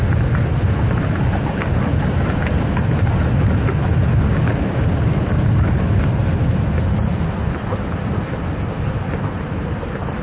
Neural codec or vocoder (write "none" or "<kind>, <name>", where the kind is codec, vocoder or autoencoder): none